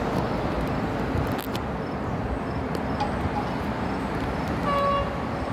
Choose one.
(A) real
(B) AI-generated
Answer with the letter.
A